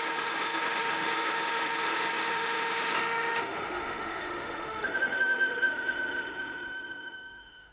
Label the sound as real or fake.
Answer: fake